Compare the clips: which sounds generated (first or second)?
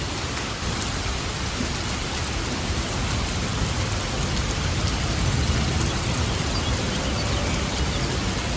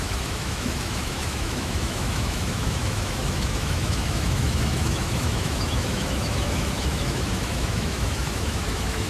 second